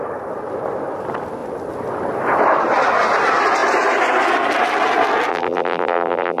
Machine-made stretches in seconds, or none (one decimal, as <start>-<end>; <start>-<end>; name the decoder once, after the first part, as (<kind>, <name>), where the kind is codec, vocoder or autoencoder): 5.3-6.4 (vocoder, BigVGAN v2)